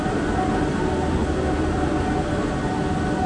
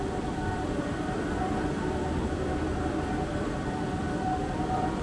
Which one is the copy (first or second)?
second